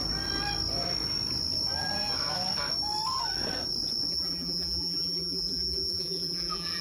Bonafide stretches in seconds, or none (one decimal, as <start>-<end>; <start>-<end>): 0.0-4.1